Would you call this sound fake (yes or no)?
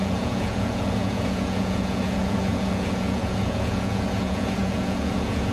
yes